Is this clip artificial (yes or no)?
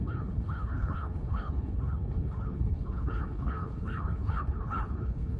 yes